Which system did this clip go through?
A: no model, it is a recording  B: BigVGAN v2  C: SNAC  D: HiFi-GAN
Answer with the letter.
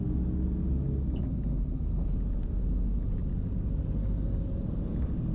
A